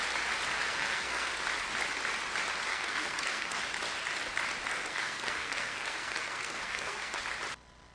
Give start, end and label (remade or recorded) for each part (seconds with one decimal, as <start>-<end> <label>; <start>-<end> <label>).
0.0-0.6 recorded; 0.6-1.3 remade; 1.3-2.7 recorded; 2.7-3.6 remade; 3.6-4.7 recorded; 4.7-7.2 remade; 7.2-7.9 recorded